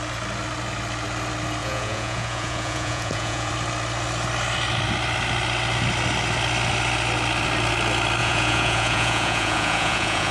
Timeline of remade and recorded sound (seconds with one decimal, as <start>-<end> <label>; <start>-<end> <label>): 0.0-1.6 recorded; 1.6-3.5 remade; 3.5-8.2 recorded; 8.2-10.3 remade